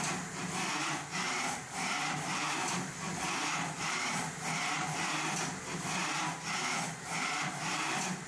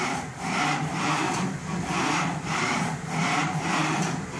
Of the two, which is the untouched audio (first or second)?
first